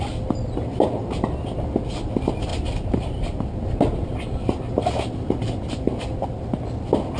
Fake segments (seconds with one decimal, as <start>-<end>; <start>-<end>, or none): none